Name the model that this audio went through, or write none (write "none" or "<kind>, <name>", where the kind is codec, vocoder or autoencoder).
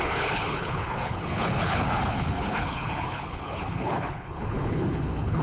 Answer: codec, HILCodec